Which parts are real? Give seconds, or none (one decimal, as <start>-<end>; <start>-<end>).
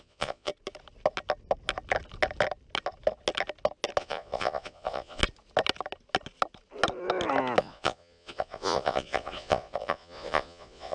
0.5-4.0; 5.2-7.6